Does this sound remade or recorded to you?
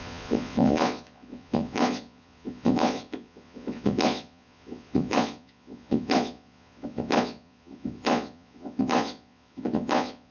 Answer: remade